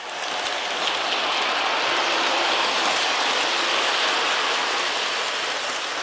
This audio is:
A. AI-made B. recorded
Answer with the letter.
B